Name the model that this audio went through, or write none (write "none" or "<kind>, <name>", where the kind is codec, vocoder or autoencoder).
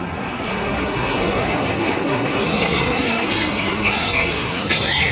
codec, SNAC